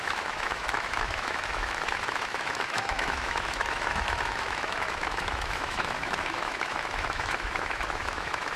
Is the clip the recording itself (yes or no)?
no